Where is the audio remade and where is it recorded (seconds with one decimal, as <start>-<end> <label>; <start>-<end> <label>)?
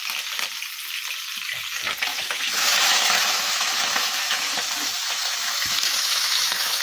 0.0-2.1 recorded; 2.1-4.5 remade; 4.5-5.0 recorded; 5.0-6.8 remade